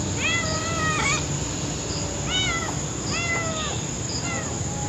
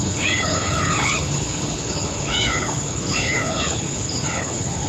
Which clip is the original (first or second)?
first